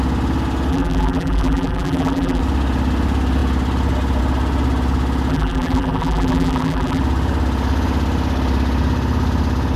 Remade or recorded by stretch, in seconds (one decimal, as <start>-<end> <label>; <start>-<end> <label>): 0.0-0.7 recorded; 0.7-2.4 remade; 2.4-5.3 recorded; 5.3-7.0 remade; 7.0-9.8 recorded